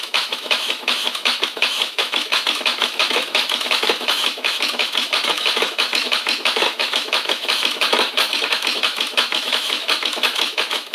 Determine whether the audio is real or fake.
fake